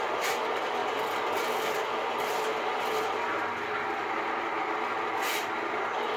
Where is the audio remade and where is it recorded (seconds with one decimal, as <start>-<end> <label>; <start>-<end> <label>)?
0.0-6.2 recorded